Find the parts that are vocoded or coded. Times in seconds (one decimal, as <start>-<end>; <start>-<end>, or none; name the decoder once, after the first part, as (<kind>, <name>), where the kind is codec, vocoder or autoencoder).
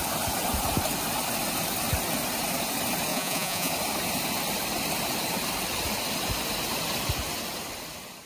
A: 3.1-3.7 (vocoder, Vocos)